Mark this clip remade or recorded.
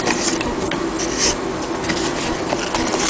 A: recorded